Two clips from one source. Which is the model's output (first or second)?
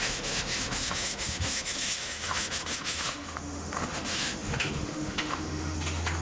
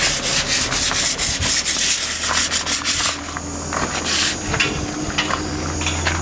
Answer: first